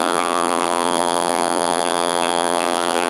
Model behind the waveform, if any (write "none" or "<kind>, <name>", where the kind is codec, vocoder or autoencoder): vocoder, BigVGAN v2